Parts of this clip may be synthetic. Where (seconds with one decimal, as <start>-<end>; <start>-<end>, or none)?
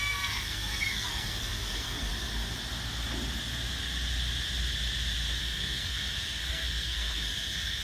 0.0-2.1; 5.4-7.8